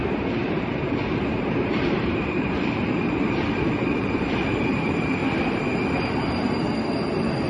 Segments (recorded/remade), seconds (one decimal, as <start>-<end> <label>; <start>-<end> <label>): 0.0-5.2 remade; 5.2-7.5 recorded